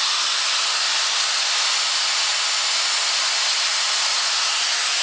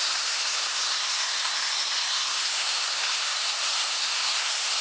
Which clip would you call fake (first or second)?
second